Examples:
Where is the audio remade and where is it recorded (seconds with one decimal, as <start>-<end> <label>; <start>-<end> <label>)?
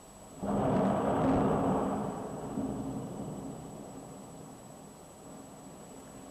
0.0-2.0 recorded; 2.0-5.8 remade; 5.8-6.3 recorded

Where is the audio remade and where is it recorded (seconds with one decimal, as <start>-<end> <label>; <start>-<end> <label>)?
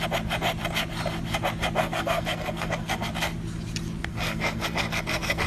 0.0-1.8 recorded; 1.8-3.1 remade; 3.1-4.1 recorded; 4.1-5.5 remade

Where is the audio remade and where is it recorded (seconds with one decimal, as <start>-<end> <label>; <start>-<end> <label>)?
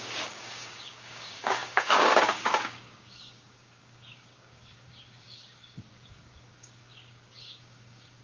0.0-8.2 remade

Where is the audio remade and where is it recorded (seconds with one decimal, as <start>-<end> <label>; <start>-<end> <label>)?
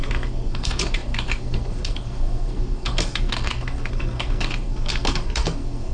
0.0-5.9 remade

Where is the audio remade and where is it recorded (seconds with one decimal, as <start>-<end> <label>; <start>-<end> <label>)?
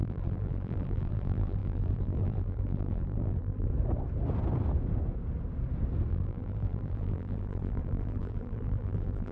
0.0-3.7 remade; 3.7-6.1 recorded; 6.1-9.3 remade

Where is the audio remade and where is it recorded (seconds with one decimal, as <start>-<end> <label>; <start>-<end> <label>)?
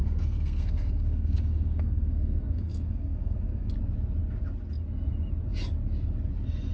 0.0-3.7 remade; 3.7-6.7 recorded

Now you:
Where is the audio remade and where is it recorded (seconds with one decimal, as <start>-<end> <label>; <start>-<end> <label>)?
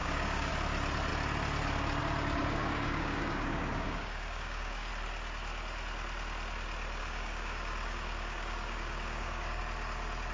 0.0-0.5 remade; 0.5-2.4 recorded; 2.4-4.9 remade; 4.9-7.0 recorded; 7.0-9.6 remade; 9.6-10.3 recorded